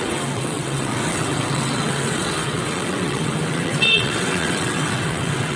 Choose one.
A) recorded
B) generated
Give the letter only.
B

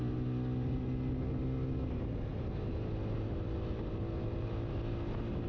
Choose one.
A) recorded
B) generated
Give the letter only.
A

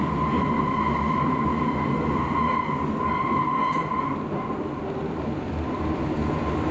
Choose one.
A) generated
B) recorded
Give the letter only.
B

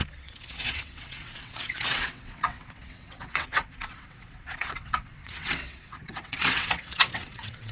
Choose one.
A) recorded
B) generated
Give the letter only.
B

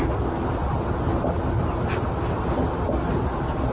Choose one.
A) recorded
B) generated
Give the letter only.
A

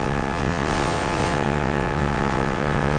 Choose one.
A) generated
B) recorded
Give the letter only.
A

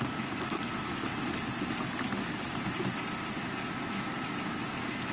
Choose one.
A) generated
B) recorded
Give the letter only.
B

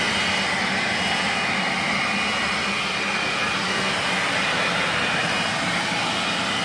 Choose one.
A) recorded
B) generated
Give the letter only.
A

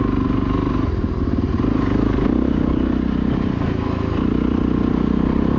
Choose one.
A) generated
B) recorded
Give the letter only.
B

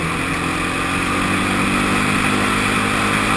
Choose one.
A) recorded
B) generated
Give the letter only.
A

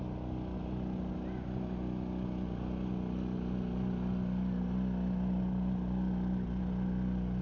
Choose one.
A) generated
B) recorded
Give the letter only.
B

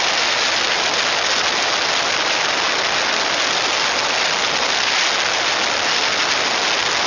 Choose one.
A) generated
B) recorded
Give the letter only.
B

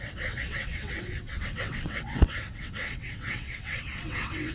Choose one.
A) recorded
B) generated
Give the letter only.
B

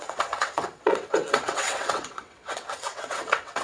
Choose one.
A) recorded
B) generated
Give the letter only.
B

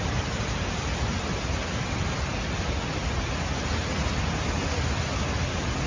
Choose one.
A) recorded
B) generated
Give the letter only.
A